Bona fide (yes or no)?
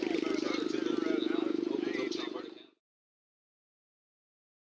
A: yes